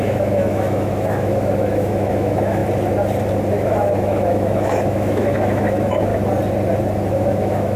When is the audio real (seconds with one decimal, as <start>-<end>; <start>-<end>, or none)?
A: 2.6-3.5; 6.1-7.1